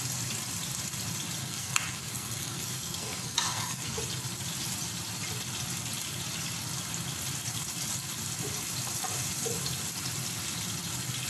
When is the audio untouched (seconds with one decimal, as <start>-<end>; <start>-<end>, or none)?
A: 0.0-1.4; 4.0-11.3